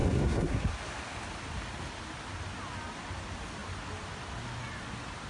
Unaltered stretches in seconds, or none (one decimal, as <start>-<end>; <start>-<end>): 0.7-5.3